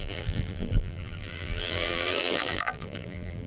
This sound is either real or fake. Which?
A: fake